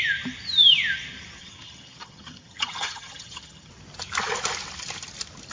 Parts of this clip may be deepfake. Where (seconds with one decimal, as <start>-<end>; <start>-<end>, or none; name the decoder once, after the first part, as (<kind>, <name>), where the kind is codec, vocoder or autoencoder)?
1.4-3.7 (vocoder, HiFi-GAN)